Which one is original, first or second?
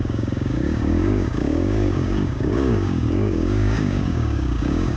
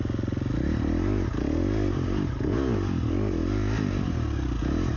second